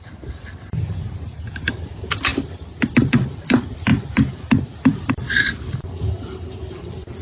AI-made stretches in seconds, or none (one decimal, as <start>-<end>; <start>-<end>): 0.0-2.3; 2.9-7.2